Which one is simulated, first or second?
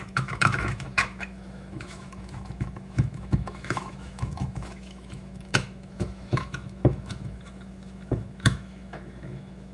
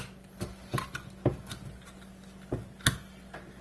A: first